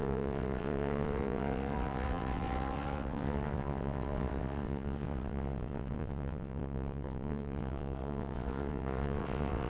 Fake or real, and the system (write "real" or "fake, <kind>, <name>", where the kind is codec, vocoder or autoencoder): fake, vocoder, WaveNeXt